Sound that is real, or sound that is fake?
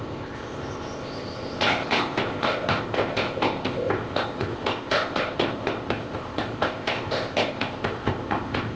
fake